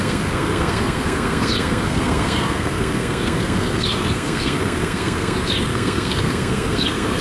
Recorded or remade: remade